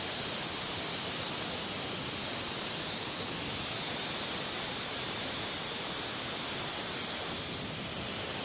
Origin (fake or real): real